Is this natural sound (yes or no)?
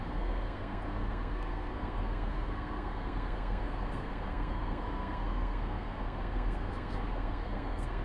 no